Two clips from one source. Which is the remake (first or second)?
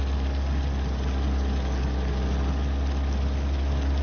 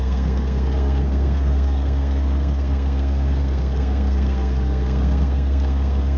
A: second